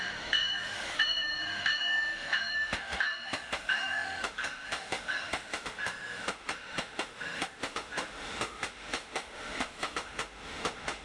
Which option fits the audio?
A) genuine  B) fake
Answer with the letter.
B